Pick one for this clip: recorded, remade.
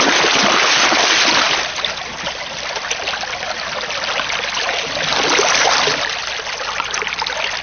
recorded